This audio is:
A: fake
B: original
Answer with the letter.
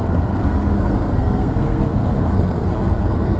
A